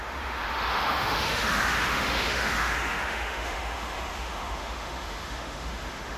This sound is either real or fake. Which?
fake